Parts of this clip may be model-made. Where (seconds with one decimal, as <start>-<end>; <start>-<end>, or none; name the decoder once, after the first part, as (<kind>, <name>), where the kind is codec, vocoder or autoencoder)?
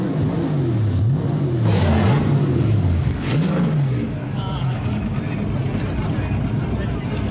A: 2.4-5.0 (codec, DAC)